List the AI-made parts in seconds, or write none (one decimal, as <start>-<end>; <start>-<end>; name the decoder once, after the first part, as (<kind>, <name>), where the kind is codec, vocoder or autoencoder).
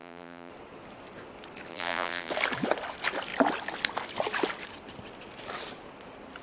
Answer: 0.0-0.5 (vocoder, BigVGAN v2); 1.7-2.3